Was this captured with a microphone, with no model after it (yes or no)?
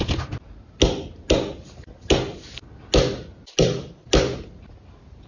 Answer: yes